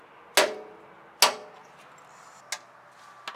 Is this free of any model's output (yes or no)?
yes